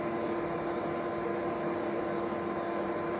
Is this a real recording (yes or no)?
yes